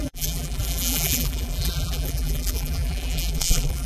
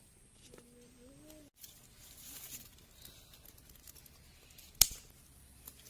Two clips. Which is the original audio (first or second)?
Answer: second